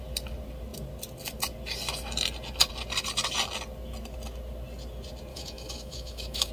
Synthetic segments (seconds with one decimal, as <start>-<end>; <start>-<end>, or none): 5.3-6.5